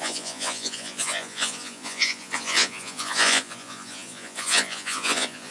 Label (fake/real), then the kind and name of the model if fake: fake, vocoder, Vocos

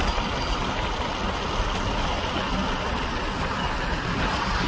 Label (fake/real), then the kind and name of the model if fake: real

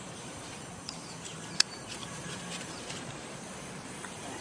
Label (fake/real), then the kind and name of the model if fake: fake, vocoder, BigVGAN v2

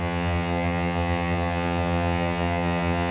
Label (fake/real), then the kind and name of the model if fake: fake, vocoder, HiFi-GAN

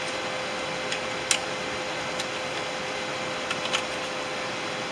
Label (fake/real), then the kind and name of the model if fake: real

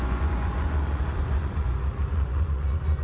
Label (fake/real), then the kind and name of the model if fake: fake, vocoder, Vocos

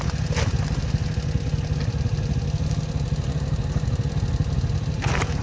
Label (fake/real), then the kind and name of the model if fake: real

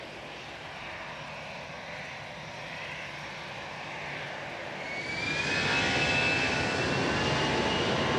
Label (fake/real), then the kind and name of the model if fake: real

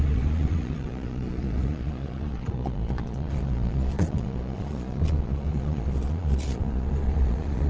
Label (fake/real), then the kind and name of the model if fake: fake, vocoder, Vocos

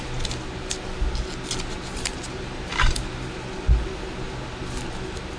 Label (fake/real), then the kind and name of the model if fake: real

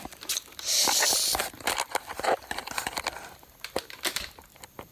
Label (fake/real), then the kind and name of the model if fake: real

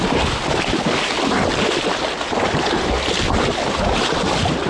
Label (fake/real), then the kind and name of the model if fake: real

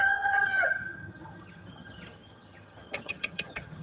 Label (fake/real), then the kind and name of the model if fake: fake, vocoder, HiFi-GAN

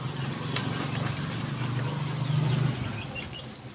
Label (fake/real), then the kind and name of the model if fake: real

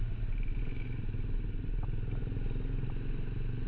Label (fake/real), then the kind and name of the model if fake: real